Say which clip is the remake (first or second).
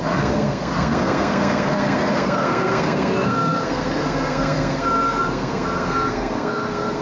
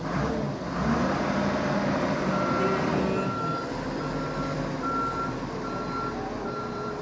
first